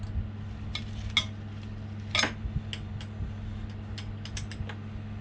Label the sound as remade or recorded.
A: recorded